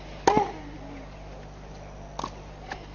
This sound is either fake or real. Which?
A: real